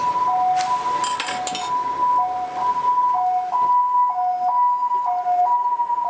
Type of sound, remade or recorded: recorded